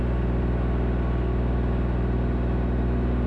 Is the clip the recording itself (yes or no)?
yes